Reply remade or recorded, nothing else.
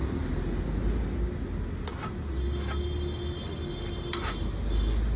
recorded